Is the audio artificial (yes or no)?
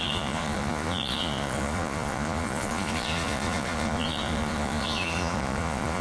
yes